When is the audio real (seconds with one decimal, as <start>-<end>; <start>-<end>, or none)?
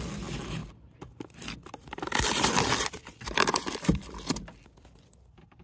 0.0-5.6